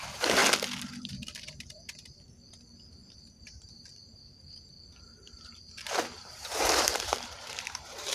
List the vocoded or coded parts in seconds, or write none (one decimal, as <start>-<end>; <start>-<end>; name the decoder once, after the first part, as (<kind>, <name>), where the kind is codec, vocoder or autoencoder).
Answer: 0.0-0.4 (vocoder, BigVGAN v2); 1.0-8.1